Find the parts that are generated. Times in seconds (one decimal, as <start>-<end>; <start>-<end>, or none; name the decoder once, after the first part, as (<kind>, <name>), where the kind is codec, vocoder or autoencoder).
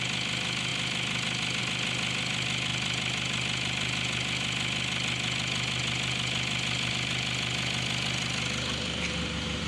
none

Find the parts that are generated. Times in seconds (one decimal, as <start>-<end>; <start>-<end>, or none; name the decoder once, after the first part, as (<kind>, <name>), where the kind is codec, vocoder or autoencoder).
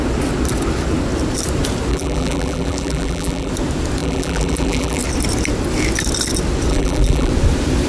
1.9-3.5 (vocoder, BigVGAN v2); 4.0-5.0; 6.7-7.3